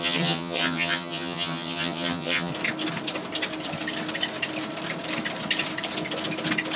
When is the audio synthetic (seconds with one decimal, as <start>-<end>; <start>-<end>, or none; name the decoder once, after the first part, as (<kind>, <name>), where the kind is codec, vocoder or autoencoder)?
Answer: 0.0-2.5 (vocoder, HiFi-GAN)